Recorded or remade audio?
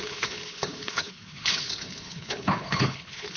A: remade